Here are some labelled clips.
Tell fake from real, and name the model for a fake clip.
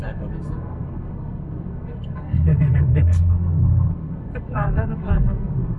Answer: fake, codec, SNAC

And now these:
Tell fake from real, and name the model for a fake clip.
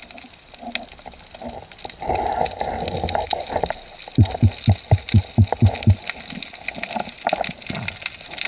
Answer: real